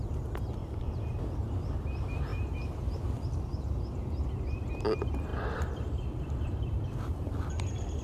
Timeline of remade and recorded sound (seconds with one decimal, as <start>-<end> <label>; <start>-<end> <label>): 0.0-0.6 recorded; 0.6-1.2 remade; 1.2-5.3 recorded; 5.3-7.6 remade; 7.6-8.0 recorded